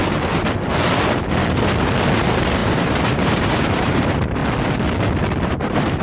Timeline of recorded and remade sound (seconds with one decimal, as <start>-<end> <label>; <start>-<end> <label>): 0.0-1.8 recorded; 1.8-4.4 remade; 4.4-5.5 recorded; 5.5-6.0 remade